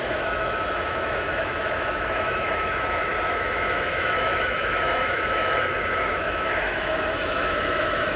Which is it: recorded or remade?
remade